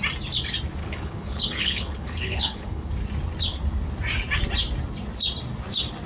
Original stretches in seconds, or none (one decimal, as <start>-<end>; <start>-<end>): 0.0-0.8; 2.9-6.1